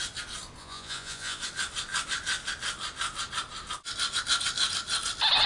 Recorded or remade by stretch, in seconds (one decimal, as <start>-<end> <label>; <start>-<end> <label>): 0.0-0.6 recorded; 0.6-1.4 remade; 1.4-5.5 recorded

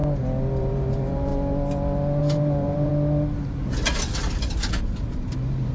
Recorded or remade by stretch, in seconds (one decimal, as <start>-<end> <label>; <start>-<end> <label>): 0.0-0.6 recorded; 0.6-1.3 remade; 1.3-2.2 recorded; 2.2-2.9 remade; 2.9-4.2 recorded; 4.2-5.7 remade

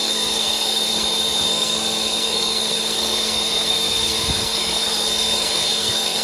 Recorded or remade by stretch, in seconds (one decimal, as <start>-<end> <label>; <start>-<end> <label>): 0.0-6.2 remade

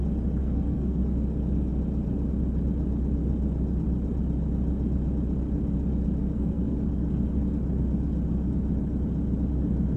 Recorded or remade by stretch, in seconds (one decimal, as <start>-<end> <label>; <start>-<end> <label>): 0.0-0.4 recorded; 0.4-1.0 remade; 1.0-6.2 recorded; 6.2-6.8 remade; 6.8-10.0 recorded

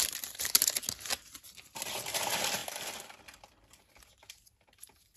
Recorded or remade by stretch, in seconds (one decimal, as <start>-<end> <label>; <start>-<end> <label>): 0.0-5.2 recorded

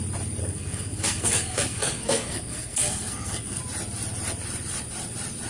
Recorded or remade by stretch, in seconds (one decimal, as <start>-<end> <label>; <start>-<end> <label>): 0.0-0.4 recorded; 0.4-3.6 remade; 3.6-5.5 recorded

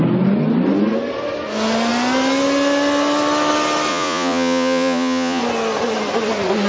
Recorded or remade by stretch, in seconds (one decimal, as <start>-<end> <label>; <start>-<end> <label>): 0.0-3.9 recorded; 3.9-5.4 remade; 5.4-6.7 recorded